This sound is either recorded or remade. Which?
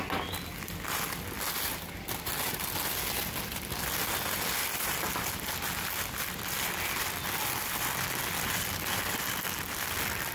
recorded